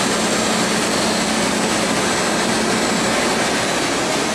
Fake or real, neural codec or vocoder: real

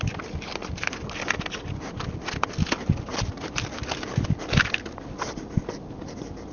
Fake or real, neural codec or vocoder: real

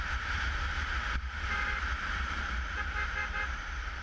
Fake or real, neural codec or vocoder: fake, vocoder, BigVGAN v2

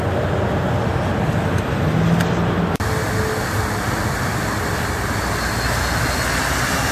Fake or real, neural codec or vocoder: real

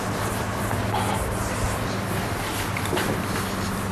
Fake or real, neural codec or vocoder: fake, vocoder, BigVGAN v2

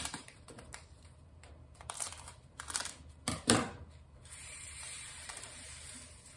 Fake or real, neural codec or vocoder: fake, vocoder, BigVGAN v2